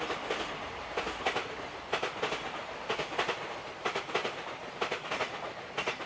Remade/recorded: recorded